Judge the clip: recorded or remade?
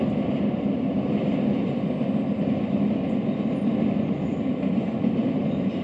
recorded